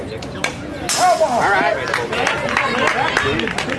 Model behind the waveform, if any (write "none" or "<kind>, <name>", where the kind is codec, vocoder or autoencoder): none